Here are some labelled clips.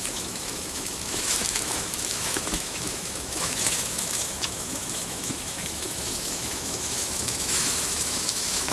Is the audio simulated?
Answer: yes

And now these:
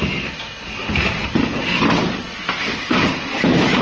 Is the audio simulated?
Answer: no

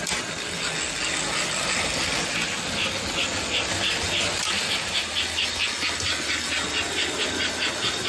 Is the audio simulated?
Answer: no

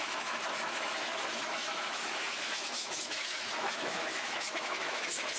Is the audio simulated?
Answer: yes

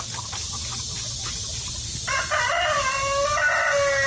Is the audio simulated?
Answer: no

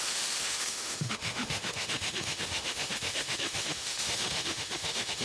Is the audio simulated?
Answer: yes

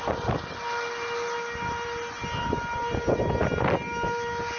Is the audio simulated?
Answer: no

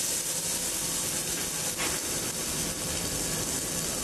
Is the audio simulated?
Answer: no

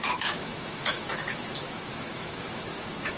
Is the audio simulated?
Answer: yes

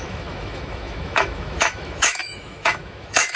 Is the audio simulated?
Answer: yes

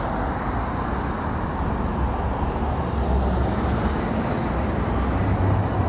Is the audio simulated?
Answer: no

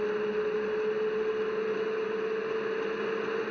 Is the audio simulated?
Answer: no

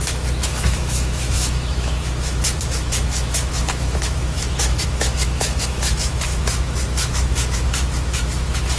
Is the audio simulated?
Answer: yes